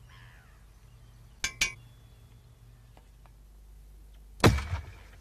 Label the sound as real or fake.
real